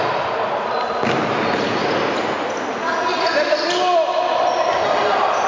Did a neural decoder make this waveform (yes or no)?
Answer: no